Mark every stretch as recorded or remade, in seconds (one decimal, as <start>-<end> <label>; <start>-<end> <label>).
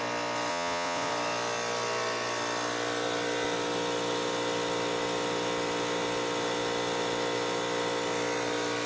0.0-0.5 recorded; 0.5-1.1 remade; 1.1-8.9 recorded